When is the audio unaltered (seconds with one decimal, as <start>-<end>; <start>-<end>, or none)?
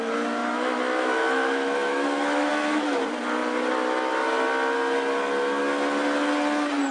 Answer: 0.0-0.4; 2.5-6.9